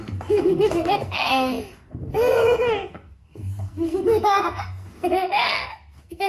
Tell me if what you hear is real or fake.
fake